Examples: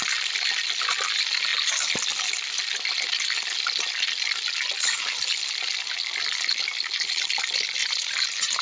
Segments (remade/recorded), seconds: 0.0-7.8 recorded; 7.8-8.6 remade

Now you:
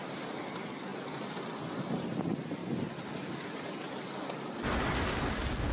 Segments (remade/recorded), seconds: 0.0-5.7 recorded

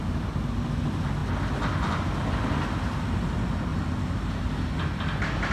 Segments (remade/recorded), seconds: 0.0-3.7 recorded; 3.7-4.5 remade; 4.5-5.5 recorded

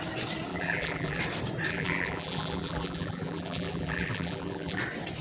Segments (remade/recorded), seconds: 0.0-0.5 recorded; 0.5-1.2 remade; 1.2-1.7 recorded; 1.7-4.8 remade; 4.8-5.2 recorded

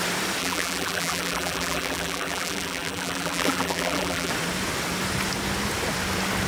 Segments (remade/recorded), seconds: 0.0-0.4 recorded; 0.4-4.3 remade; 4.3-6.5 recorded

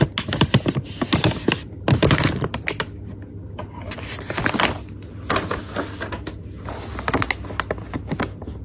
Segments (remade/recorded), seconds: 0.0-1.6 recorded; 1.6-2.8 remade; 2.8-8.6 recorded

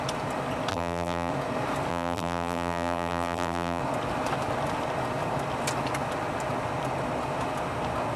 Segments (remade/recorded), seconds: 0.0-0.7 recorded; 0.7-1.3 remade; 1.3-1.9 recorded; 1.9-3.8 remade; 3.8-8.2 recorded